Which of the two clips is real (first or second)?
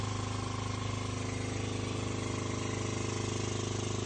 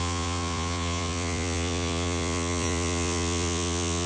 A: first